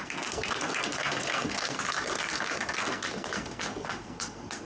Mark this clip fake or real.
fake